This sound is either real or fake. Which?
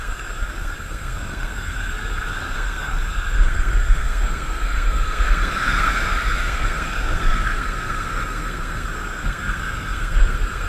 fake